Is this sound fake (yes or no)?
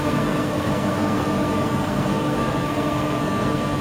yes